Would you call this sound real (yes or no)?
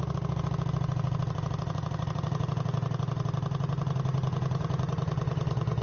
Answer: yes